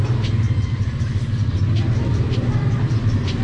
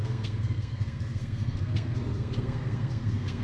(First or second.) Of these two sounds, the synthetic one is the second